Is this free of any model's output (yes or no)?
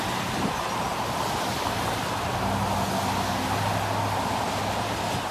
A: yes